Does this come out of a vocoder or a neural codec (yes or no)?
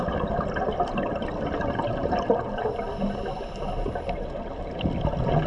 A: no